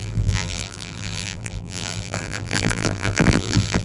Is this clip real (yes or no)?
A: no